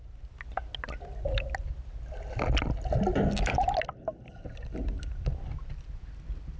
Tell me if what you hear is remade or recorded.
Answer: recorded